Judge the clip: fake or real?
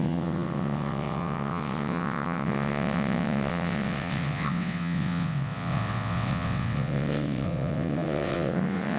fake